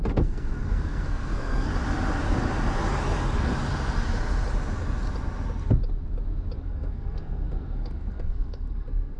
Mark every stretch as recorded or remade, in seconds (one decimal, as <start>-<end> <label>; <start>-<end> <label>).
0.0-1.7 remade; 1.7-6.6 recorded; 6.6-9.2 remade